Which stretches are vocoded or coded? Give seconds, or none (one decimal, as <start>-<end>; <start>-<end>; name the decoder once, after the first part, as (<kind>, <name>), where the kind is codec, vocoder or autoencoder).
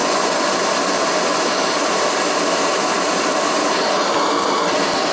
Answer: 0.0-0.5 (vocoder, Vocos)